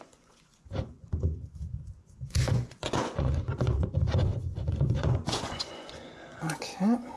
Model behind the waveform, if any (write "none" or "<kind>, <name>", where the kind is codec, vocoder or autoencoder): vocoder, Vocos